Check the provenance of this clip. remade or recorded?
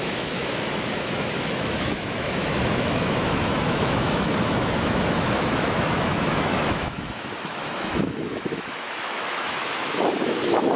remade